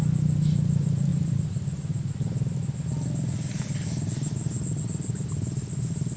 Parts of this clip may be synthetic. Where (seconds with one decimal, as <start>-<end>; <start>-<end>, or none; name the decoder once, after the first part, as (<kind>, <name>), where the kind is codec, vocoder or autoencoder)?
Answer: none